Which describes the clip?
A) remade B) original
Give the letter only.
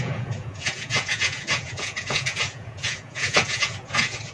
A